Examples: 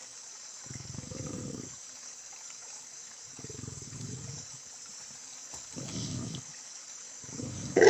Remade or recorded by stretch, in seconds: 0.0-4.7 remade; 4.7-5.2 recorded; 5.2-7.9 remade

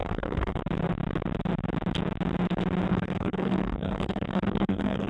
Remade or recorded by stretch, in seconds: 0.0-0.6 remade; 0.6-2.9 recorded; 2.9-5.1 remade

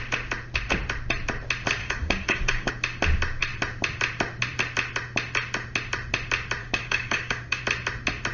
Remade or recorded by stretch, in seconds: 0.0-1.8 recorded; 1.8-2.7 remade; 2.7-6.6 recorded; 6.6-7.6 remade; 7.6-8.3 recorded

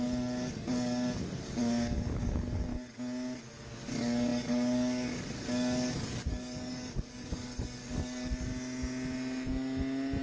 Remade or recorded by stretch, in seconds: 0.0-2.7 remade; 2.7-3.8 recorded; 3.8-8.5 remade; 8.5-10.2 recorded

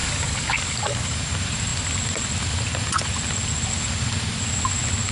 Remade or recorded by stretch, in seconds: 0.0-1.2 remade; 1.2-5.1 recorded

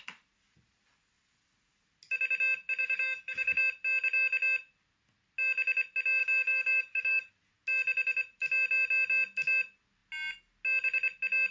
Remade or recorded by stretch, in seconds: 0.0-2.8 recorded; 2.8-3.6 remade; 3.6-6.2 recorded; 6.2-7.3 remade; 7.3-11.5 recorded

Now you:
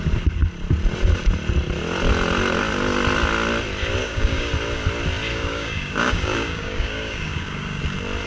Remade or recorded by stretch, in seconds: 0.0-4.0 recorded; 4.0-4.5 remade; 4.5-5.3 recorded; 5.3-7.8 remade; 7.8-8.3 recorded